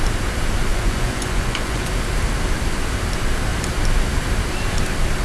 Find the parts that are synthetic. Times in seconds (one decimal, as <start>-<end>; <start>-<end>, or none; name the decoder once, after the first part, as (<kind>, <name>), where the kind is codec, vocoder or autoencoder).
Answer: 0.7-1.9 (vocoder, Vocos)